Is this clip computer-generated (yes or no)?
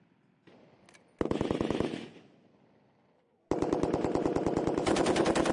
no